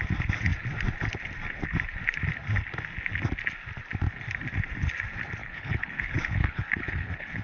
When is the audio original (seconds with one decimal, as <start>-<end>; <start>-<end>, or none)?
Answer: 0.0-5.4